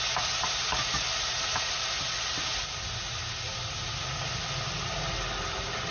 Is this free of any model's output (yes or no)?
yes